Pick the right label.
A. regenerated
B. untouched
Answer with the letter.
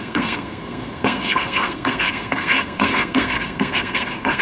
A